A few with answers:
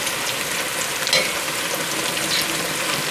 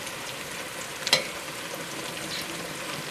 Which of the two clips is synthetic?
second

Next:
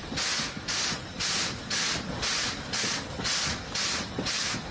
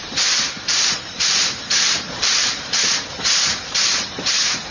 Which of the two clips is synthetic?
second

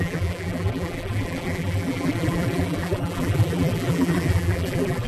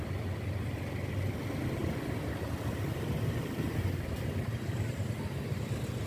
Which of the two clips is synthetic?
first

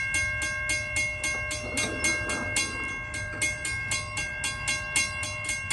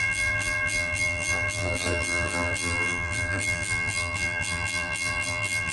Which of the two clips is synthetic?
second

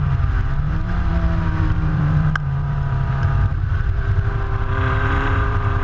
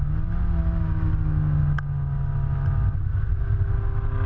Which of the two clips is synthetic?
first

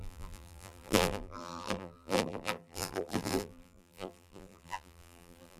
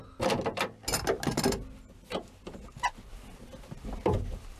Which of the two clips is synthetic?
first